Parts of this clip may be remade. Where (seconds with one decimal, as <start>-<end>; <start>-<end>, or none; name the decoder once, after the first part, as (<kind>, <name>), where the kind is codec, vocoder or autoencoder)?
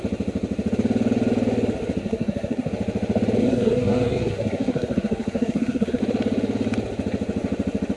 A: 2.0-2.7 (codec, SNAC); 3.4-6.0